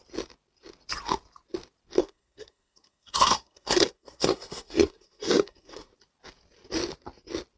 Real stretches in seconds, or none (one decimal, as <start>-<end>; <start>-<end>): 0.0-2.0; 5.9-7.6